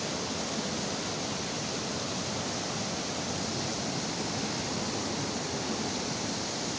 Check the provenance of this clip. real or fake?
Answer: real